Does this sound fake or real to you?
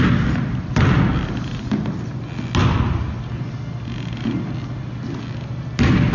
real